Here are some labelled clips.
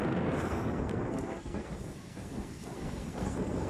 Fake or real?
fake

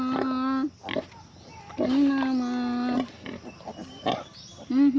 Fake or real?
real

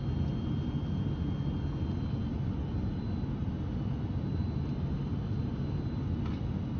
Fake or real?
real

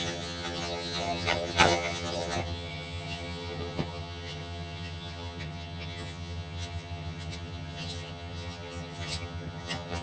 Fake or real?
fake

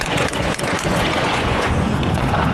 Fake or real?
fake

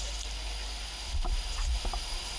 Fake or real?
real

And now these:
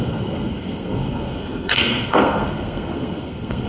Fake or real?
fake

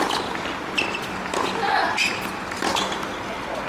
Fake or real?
real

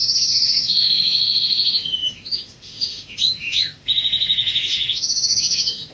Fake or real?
fake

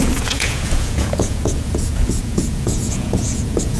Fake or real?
fake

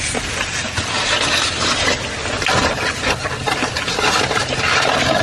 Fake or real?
real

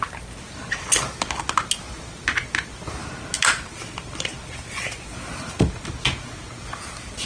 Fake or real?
real